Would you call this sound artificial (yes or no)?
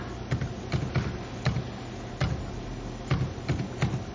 no